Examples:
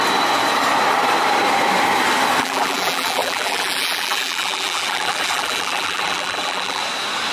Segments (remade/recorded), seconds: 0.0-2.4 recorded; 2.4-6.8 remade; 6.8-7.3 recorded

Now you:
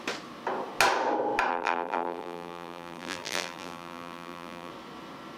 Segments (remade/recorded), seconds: 0.0-1.5 recorded; 1.5-4.7 remade; 4.7-5.4 recorded